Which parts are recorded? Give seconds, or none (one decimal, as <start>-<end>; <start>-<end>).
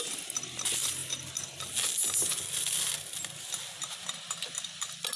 0.0-5.2